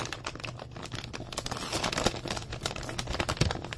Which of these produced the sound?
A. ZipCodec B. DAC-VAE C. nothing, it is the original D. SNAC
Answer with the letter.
C